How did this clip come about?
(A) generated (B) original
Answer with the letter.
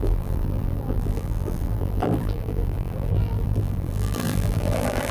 A